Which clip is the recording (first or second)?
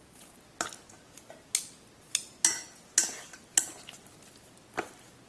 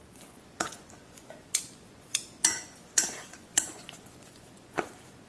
first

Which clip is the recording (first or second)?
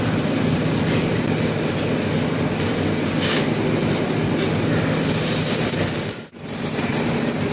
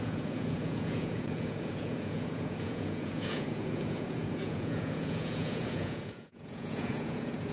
first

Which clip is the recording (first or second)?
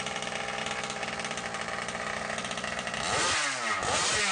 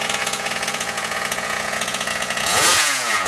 first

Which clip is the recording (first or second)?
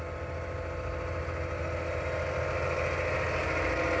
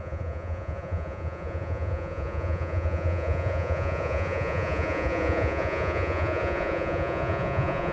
first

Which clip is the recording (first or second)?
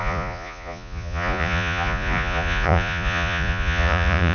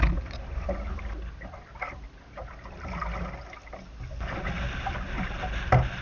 second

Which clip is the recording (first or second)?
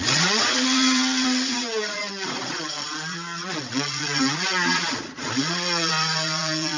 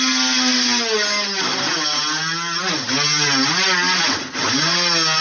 second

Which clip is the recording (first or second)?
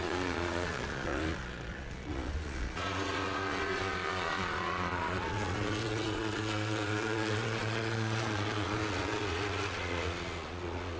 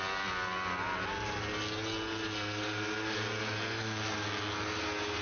second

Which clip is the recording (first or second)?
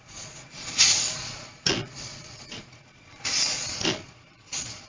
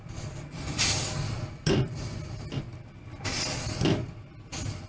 second